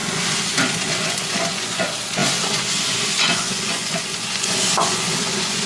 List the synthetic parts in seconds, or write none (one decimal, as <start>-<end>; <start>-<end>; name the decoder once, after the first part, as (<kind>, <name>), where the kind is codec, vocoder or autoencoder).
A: 0.0-5.7 (vocoder, Vocos)